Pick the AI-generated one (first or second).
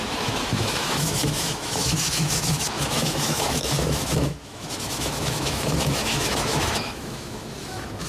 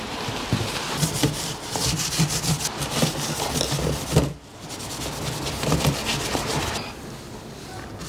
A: first